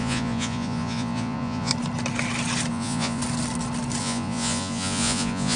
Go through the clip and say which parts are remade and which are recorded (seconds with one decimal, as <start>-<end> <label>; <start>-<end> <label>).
0.0-1.7 remade; 1.7-2.7 recorded; 2.7-3.2 remade; 3.2-4.0 recorded; 4.0-5.6 remade